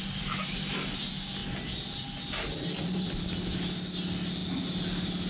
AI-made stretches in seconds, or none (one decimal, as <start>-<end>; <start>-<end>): none

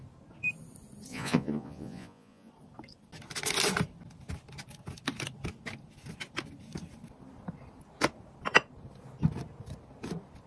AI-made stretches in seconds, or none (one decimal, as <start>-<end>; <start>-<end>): 1.1-2.5

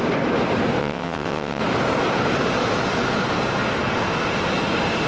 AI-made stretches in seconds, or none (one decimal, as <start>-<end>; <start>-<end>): 0.8-1.6

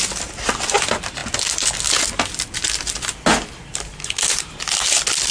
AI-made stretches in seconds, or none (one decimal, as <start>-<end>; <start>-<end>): none

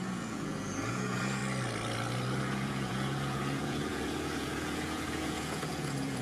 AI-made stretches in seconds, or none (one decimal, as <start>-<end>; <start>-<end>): 0.0-1.4; 2.4-6.2